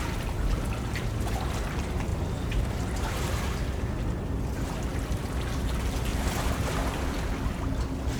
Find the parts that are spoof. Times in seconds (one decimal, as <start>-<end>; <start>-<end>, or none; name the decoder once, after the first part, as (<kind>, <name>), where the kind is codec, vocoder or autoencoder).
2.1-2.6 (vocoder, BigVGAN v2); 6.1-7.3